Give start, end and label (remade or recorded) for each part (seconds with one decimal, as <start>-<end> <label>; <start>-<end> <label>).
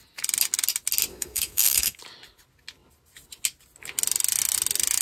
0.0-1.1 recorded; 1.1-2.0 remade; 2.0-5.0 recorded